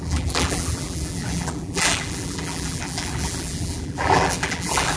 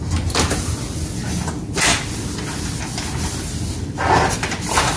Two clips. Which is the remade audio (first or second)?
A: first